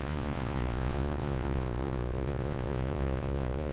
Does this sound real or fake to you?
fake